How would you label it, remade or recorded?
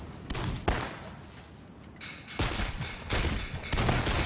recorded